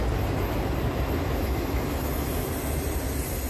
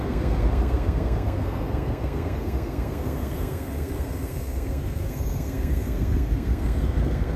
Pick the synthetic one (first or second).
second